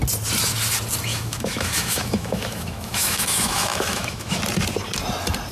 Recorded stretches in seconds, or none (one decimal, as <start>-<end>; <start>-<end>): 0.0-1.1; 4.4-5.5